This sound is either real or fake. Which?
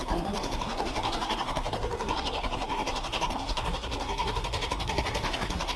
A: fake